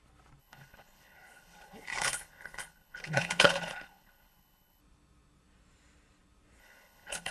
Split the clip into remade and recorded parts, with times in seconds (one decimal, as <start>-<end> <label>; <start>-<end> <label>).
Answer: 0.0-0.4 recorded; 0.4-4.8 remade; 4.8-6.6 recorded; 6.6-7.3 remade

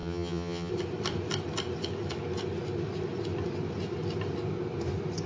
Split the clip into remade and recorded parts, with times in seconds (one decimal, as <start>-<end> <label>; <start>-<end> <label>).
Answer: 0.0-0.7 remade; 0.7-5.3 recorded